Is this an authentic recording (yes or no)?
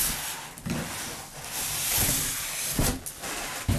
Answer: yes